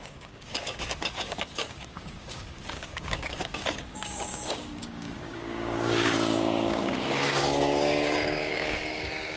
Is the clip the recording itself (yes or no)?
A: no